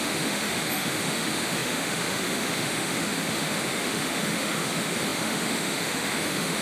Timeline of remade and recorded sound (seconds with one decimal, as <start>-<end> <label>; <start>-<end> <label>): 0.0-6.6 remade